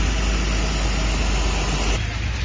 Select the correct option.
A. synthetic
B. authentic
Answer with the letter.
B